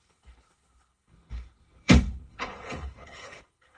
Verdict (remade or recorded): remade